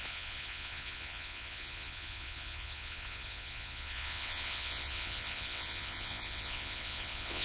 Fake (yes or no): yes